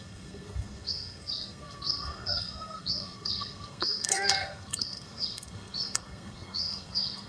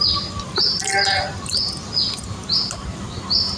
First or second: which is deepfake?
first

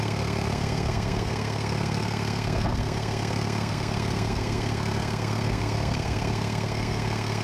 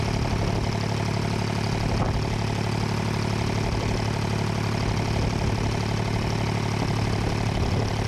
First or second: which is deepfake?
first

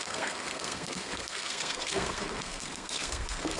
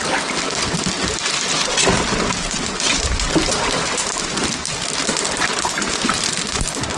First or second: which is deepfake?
first